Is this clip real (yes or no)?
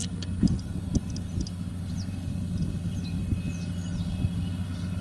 yes